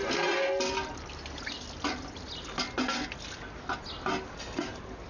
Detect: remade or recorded recorded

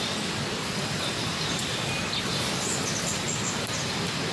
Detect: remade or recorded recorded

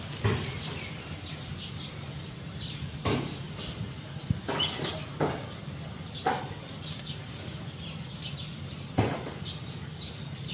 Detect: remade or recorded recorded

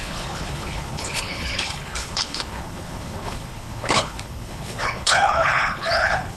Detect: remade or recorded remade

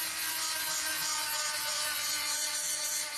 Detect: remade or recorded remade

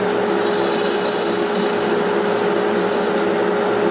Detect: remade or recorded recorded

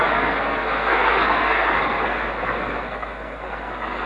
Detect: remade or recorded remade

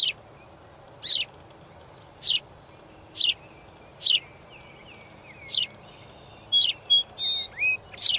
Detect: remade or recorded recorded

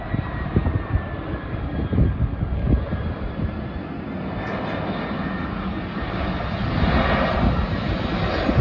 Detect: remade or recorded recorded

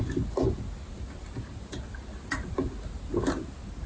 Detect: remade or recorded recorded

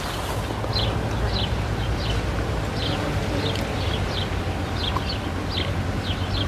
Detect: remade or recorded recorded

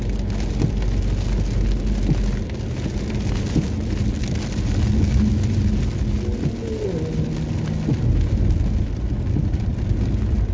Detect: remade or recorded recorded